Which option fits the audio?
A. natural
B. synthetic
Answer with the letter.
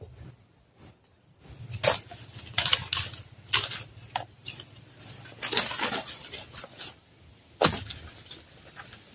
A